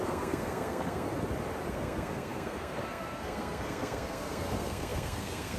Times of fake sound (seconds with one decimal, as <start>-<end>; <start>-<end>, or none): 0.0-1.1; 1.7-5.6